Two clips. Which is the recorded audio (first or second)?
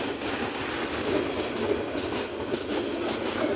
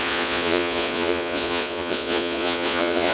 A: first